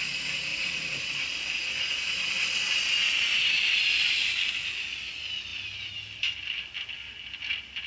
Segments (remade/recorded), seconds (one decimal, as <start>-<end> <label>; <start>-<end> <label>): 0.0-0.5 recorded; 0.5-1.0 remade; 1.0-7.9 recorded